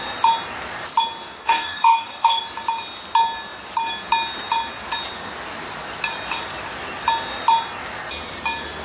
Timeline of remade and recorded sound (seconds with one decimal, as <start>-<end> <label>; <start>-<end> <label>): 0.0-1.4 recorded; 1.4-2.4 remade; 2.4-8.8 recorded